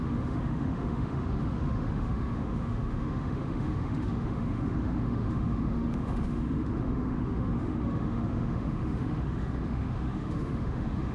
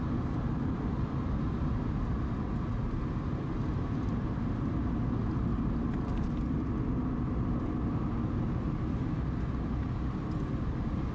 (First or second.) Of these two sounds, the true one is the second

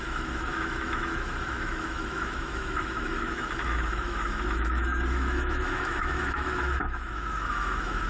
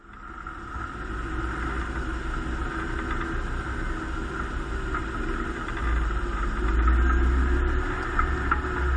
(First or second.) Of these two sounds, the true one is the second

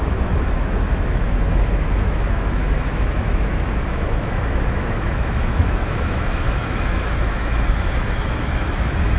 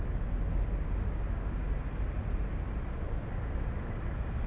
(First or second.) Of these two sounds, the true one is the second